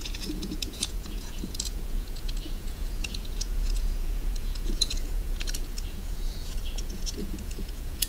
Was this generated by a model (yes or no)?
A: yes